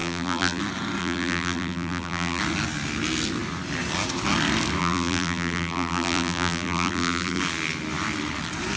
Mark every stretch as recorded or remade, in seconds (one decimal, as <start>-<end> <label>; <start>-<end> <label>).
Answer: 0.0-0.6 remade; 0.6-1.0 recorded; 1.0-2.4 remade; 2.4-4.8 recorded; 4.8-7.4 remade; 7.4-8.8 recorded